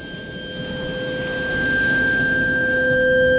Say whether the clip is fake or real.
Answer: real